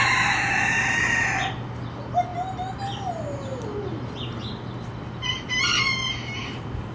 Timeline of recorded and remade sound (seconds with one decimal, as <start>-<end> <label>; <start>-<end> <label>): 0.0-6.9 recorded